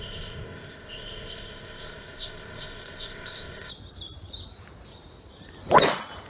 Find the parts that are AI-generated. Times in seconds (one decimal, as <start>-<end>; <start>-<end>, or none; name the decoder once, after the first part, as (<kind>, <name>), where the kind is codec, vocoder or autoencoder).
0.0-3.7 (codec, ZipCodec)